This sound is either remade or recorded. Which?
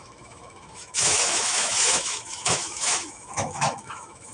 remade